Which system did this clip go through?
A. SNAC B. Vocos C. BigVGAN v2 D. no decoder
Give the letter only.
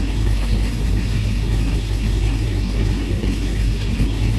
A